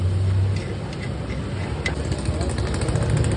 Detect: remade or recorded recorded